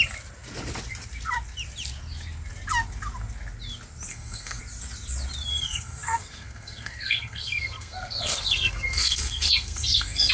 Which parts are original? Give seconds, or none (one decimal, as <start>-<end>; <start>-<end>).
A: 0.0-4.1; 4.6-5.5